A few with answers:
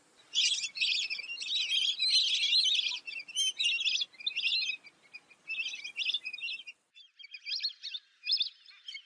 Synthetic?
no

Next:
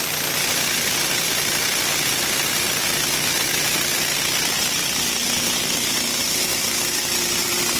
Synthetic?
no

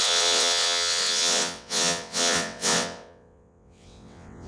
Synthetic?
yes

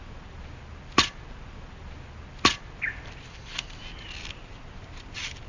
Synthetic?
no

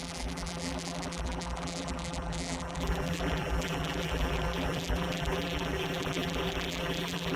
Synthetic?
yes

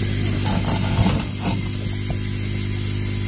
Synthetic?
no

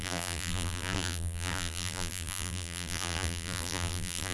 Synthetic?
yes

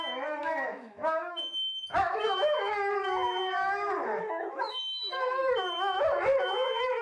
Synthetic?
yes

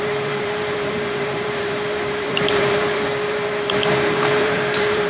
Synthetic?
yes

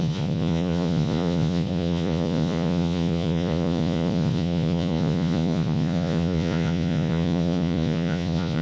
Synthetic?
yes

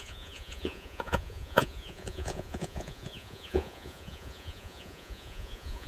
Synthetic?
yes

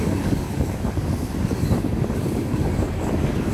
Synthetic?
yes